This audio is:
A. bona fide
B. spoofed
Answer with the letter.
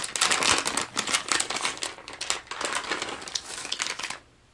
A